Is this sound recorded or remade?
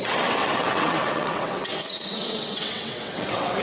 remade